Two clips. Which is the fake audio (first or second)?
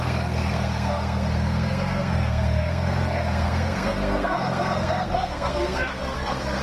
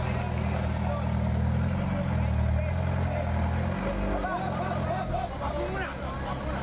first